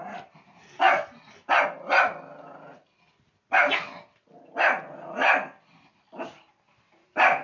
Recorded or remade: recorded